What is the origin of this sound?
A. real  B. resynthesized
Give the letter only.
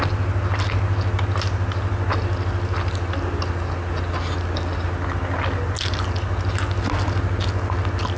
A